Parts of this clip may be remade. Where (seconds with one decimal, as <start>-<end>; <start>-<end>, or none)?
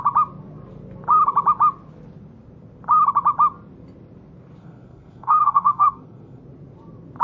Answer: 4.6-6.4